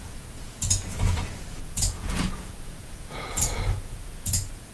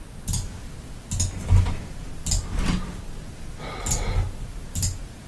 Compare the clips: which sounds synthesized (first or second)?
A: first